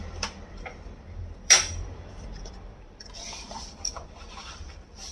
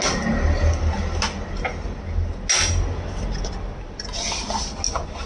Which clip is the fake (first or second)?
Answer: first